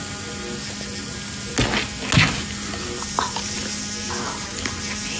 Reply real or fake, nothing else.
real